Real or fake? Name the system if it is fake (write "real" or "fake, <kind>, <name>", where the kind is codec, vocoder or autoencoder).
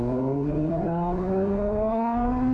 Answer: fake, codec, SNAC